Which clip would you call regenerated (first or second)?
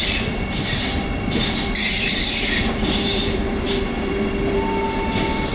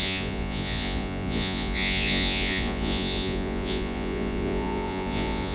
second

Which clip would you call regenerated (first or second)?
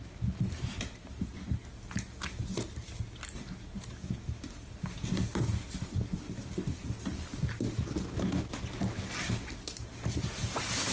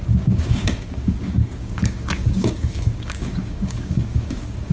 second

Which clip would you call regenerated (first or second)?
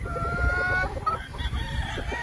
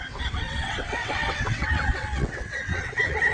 second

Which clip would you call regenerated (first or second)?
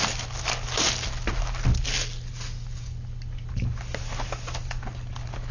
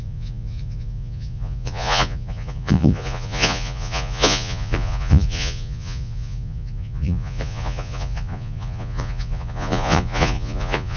second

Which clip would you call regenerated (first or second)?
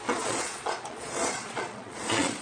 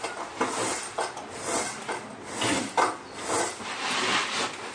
first